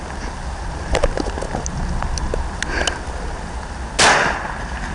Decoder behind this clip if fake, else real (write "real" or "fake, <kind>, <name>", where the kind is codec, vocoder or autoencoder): real